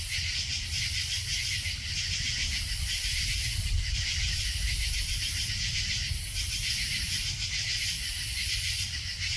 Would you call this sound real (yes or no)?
no